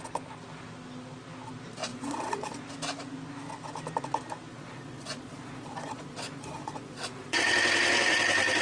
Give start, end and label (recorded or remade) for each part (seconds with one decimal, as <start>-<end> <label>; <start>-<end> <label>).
0.0-1.9 recorded; 1.9-2.6 remade; 2.6-4.5 recorded; 4.5-7.4 remade; 7.4-8.6 recorded